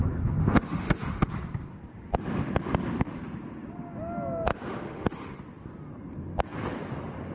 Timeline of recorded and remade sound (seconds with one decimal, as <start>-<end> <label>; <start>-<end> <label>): 0.0-0.4 recorded; 0.4-1.3 remade; 1.3-4.5 recorded; 4.5-5.4 remade; 5.4-7.3 recorded